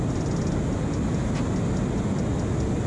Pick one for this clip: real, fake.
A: real